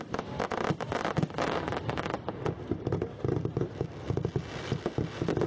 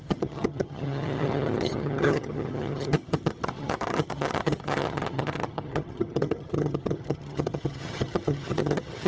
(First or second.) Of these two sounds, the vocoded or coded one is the second